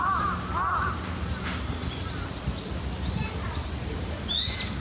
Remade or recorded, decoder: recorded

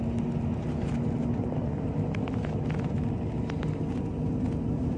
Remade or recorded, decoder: recorded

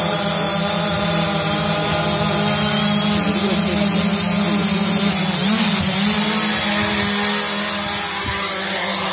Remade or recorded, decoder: recorded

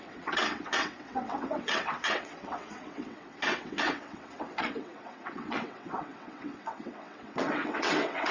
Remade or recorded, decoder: remade, vocoder, WaveNeXt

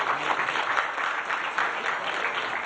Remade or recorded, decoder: recorded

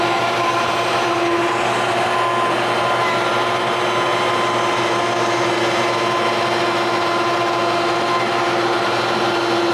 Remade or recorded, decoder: recorded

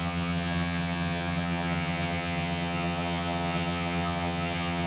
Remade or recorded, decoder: remade, vocoder, HiFi-GAN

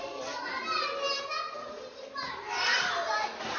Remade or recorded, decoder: recorded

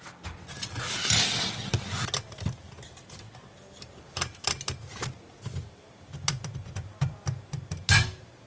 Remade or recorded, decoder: recorded